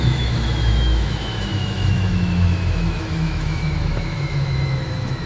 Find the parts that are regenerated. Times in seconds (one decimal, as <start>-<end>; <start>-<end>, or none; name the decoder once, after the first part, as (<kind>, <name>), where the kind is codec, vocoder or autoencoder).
0.0-5.3 (autoencoder, DAC-VAE)